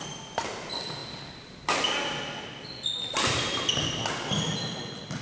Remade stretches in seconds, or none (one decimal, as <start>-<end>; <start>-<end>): none